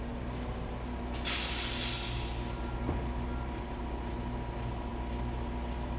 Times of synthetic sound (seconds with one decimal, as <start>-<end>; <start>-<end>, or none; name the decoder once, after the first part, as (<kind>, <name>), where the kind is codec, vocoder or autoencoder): none